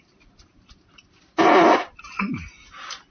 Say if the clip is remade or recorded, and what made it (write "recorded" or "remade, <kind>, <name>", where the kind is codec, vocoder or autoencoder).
recorded